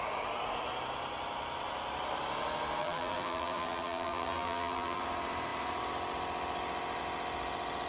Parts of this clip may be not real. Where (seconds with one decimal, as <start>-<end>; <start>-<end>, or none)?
2.8-5.0